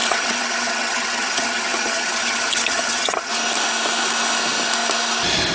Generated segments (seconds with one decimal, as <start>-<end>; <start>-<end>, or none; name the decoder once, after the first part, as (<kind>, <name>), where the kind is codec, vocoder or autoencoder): 0.0-3.3 (vocoder, HiFi-GAN)